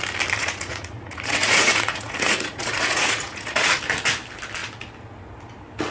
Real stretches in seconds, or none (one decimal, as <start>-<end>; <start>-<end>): 0.0-0.4; 3.8-5.9